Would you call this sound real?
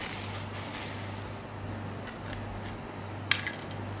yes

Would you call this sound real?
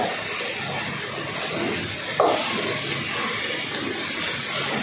yes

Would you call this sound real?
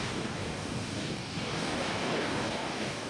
no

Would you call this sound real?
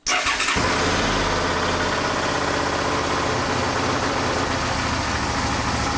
yes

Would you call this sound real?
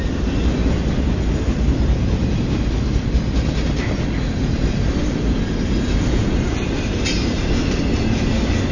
yes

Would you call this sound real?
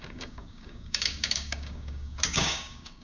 no